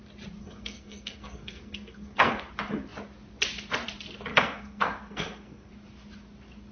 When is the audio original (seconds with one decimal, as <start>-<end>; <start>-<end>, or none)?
0.0-0.4; 2.4-4.3; 5.7-6.7